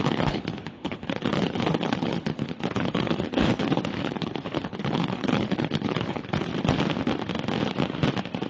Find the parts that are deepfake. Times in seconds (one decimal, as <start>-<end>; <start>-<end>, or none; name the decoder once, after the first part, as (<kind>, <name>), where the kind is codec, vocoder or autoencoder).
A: 0.0-6.5 (codec, HILCodec)